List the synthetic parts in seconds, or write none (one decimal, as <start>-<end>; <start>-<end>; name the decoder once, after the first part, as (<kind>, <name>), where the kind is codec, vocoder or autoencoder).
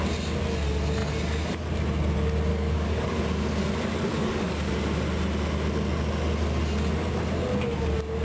2.5-3.2 (codec, DAC); 4.1-4.7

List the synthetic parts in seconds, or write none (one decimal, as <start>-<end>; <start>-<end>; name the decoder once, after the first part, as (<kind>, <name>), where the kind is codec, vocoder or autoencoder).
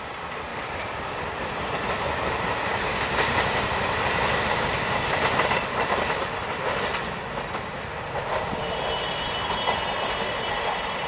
0.5-2.2 (vocoder, BigVGAN v2)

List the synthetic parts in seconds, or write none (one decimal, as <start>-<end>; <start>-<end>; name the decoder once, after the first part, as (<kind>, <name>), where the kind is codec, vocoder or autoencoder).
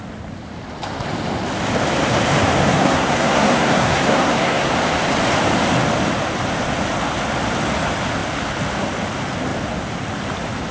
2.7-4.7 (codec, SNAC)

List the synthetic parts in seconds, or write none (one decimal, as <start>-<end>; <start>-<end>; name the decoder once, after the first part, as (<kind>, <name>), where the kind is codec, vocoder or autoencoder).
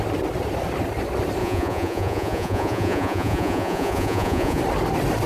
1.4-4.6 (vocoder, Vocos)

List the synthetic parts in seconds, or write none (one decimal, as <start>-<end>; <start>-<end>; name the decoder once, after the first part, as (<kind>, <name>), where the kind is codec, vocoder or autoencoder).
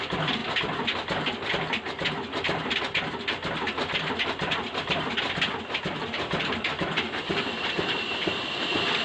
0.0-0.4 (vocoder, BigVGAN v2); 1.5-9.0